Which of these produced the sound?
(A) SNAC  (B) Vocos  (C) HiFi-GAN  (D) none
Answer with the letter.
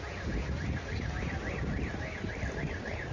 D